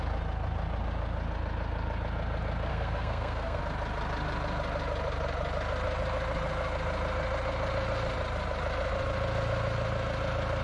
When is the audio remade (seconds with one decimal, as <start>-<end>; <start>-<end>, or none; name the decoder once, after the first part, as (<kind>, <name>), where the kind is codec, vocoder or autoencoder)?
2.7-3.6 (codec, SNAC)